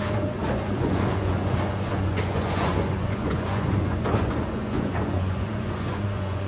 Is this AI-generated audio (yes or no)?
yes